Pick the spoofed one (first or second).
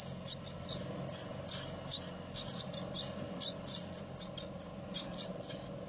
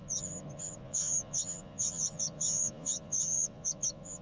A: second